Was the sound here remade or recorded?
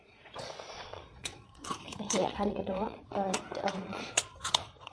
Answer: remade